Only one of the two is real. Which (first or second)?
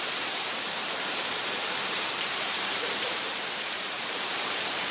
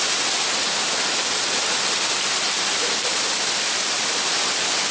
second